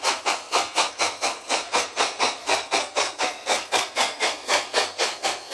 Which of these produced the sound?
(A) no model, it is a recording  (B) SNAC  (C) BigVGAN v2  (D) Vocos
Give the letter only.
B